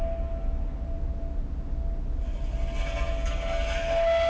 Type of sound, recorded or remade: recorded